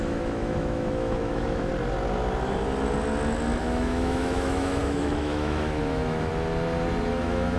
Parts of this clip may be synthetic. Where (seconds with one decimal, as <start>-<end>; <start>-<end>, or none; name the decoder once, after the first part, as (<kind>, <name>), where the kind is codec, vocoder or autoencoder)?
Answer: 0.0-1.7 (autoencoder, DAC-VAE); 3.6-6.3; 7.1-7.6

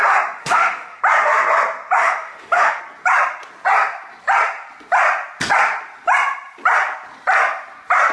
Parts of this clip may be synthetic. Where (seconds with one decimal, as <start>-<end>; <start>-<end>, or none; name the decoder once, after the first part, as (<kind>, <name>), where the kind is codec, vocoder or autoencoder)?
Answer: 0.4-1.0 (autoencoder, DAC-VAE); 2.0-2.8